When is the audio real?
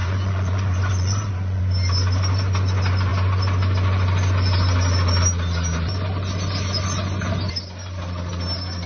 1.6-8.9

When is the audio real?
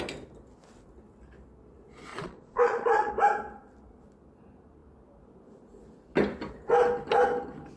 0.0-2.1; 3.1-7.8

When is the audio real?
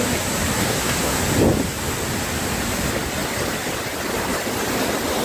0.0-0.6; 1.2-5.2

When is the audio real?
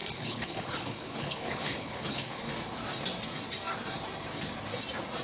2.5-5.2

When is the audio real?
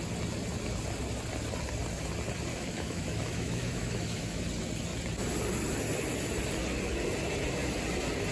0.0-2.5; 4.4-8.3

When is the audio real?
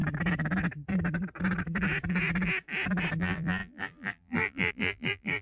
0.0-3.2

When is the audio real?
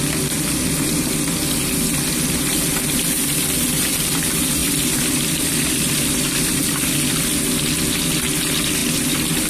0.0-4.6; 6.7-9.5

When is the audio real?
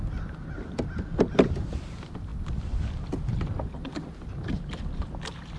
0.0-5.6